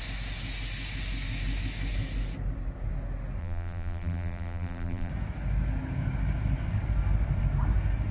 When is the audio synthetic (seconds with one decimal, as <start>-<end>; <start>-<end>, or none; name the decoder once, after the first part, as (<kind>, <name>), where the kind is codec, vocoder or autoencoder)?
3.4-5.1 (vocoder, BigVGAN v2)